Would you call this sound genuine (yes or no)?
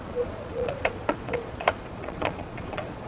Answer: no